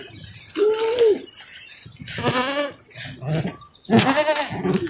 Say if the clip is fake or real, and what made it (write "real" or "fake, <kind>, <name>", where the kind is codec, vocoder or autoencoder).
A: real